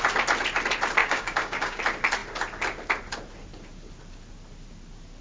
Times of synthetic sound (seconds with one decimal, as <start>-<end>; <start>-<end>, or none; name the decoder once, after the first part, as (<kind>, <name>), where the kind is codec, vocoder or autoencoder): 1.0-1.8 (codec, DAC)